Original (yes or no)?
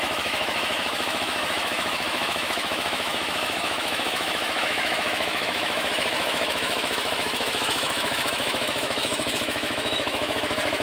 no